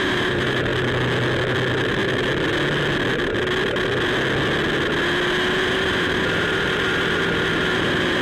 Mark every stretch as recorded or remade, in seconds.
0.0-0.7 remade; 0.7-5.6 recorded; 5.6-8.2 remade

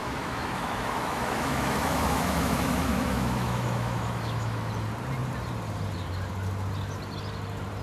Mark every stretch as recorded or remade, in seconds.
0.0-4.7 remade; 4.7-7.8 recorded

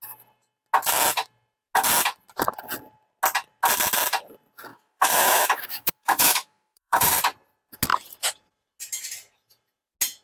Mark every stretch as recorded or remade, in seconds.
0.0-4.7 recorded; 4.7-7.1 remade; 7.1-10.2 recorded

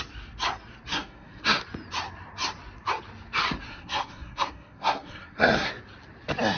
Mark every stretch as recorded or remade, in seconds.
0.0-0.9 recorded; 0.9-1.6 remade; 1.6-3.7 recorded; 3.7-5.7 remade; 5.7-6.6 recorded

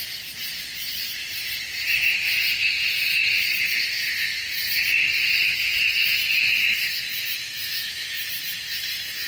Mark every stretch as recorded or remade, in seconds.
0.0-7.5 recorded; 7.5-8.2 remade; 8.2-9.3 recorded

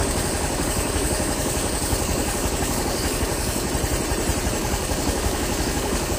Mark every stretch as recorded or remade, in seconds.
0.0-3.7 remade; 3.7-4.6 recorded; 4.6-6.2 remade